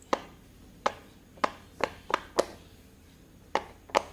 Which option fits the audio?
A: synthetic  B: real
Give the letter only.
B